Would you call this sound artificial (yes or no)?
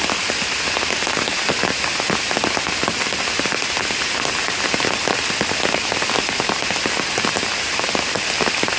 no